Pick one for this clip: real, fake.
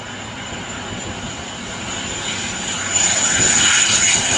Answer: real